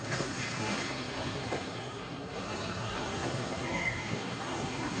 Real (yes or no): no